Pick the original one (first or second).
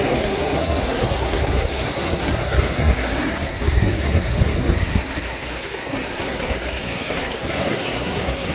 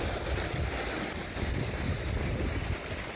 second